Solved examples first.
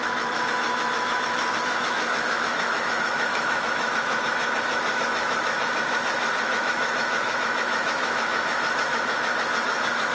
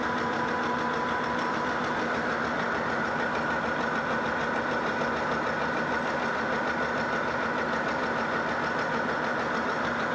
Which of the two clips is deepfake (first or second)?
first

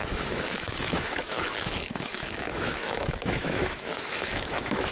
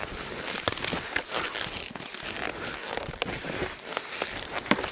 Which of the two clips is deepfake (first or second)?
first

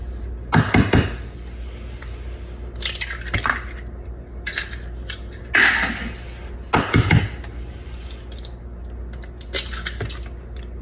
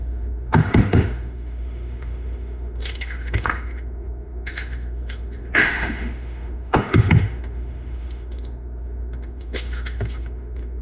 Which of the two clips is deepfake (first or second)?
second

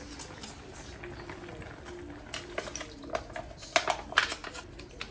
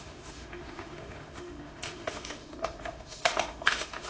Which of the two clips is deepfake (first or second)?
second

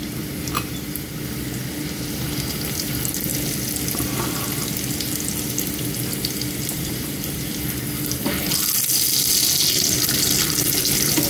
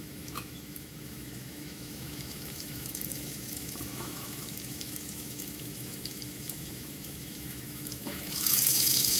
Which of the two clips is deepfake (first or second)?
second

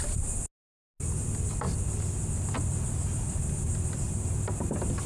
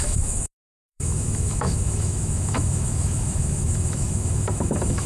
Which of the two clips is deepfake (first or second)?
second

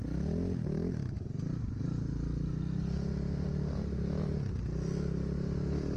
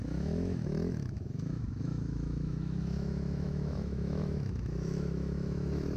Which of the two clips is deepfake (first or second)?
second